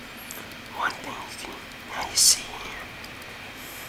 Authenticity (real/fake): real